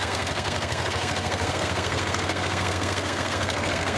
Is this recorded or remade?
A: remade